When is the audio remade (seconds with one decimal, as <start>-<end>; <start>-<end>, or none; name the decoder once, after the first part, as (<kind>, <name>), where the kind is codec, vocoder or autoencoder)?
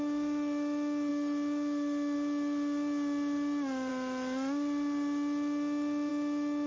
none